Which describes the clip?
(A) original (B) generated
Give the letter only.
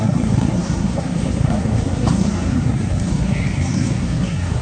B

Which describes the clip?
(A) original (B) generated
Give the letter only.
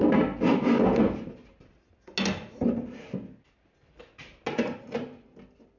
A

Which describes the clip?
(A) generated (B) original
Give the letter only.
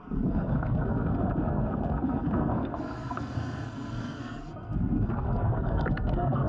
A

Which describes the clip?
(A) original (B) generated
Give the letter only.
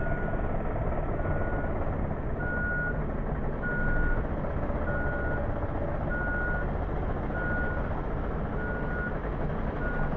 A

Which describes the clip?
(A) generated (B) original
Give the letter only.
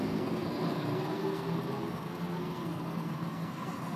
A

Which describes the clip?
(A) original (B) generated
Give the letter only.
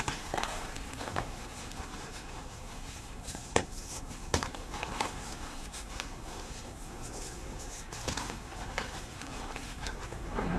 B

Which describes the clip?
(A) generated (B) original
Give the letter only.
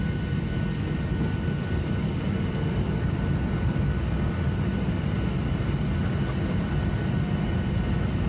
B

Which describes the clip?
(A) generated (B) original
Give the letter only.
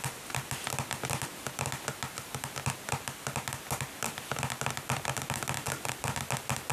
B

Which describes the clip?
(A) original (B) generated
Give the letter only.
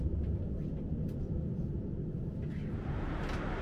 A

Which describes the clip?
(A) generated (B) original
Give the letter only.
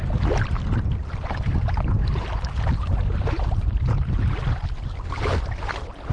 B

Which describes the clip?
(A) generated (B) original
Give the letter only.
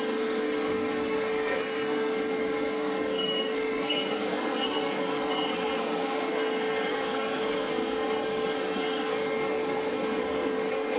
A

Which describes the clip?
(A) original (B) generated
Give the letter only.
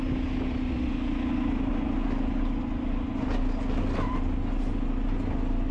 A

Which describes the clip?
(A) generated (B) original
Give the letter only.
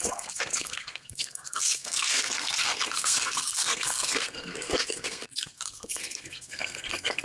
A